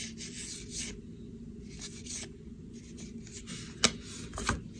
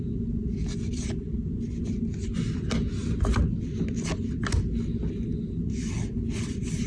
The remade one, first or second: second